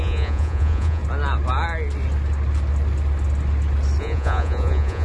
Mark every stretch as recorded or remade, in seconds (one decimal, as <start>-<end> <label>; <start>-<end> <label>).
0.0-1.0 remade; 1.0-4.0 recorded; 4.0-5.0 remade